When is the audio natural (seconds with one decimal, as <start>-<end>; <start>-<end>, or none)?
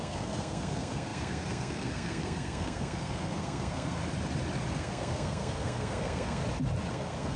4.0-4.7; 6.4-6.9